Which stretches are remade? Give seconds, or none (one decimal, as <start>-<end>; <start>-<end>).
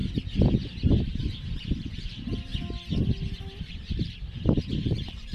1.0-2.5; 3.6-5.3